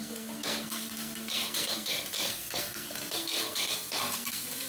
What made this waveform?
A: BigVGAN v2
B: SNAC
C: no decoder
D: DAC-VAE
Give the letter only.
B